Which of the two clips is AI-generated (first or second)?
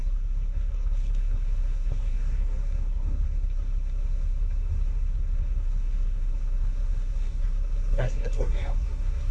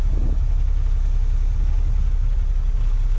first